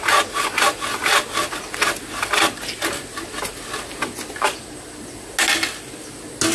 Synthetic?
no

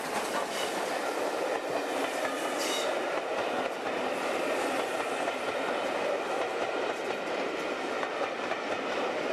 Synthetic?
no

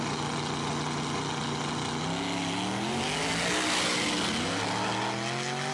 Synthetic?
no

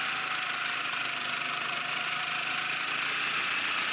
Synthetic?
no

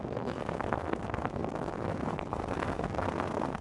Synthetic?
yes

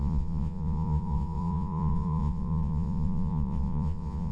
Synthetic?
yes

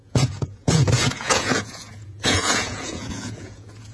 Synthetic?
yes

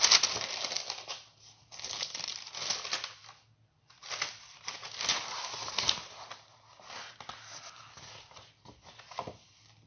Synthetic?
no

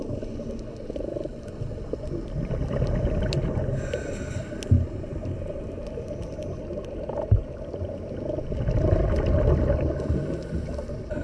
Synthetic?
no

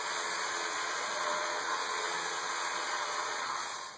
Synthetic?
yes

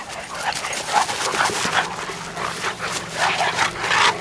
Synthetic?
no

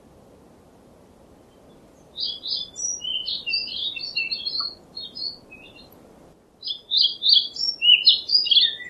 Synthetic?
no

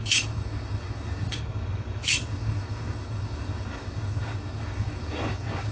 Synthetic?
yes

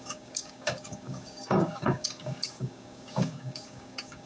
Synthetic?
yes